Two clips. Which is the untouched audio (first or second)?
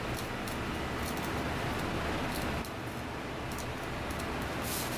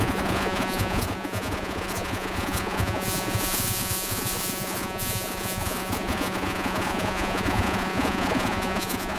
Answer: first